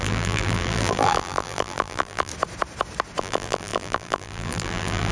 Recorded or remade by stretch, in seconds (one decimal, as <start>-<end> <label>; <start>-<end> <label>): 0.0-2.3 remade; 2.3-3.2 recorded; 3.2-5.1 remade